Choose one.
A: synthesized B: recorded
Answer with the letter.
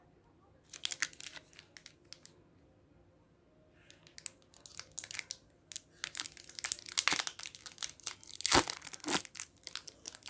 B